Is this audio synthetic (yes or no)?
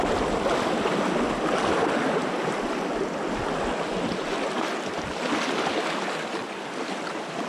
no